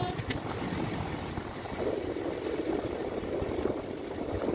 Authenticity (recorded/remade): recorded